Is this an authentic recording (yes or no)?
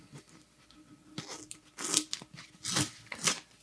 yes